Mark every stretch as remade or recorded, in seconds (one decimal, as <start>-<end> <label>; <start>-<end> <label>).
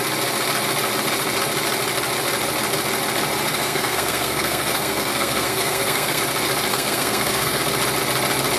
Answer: 0.0-3.5 recorded; 3.5-6.2 remade; 6.2-6.7 recorded; 6.7-7.6 remade; 7.6-8.6 recorded